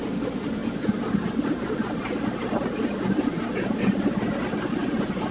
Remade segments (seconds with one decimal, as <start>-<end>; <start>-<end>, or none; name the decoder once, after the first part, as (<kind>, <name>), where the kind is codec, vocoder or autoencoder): none